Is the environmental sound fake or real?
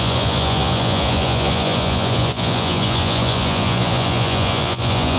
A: fake